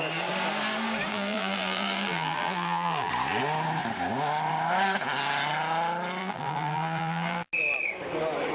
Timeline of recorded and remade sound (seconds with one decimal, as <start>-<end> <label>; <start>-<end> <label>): 0.0-1.1 recorded; 1.1-3.1 remade; 3.1-6.2 recorded; 6.2-7.5 remade; 7.5-8.5 recorded